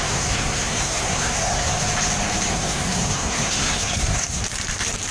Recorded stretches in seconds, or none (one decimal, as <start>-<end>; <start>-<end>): 1.7-2.5; 4.4-5.1